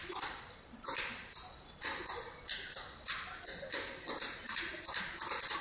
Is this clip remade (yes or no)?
no